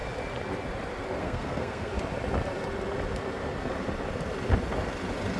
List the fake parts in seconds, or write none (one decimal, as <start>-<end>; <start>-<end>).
1.2-1.9